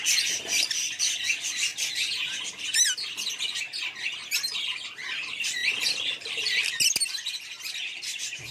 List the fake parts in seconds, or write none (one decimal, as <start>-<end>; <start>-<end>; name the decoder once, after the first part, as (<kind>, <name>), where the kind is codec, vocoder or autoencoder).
none